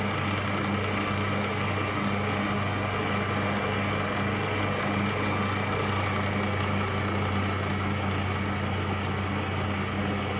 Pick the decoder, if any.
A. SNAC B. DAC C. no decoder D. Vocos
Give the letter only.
C